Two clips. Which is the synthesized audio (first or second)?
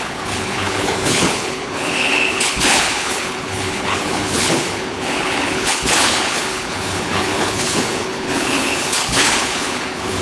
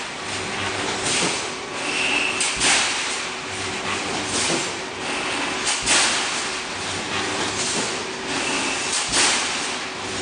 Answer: first